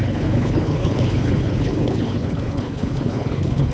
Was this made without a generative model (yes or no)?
no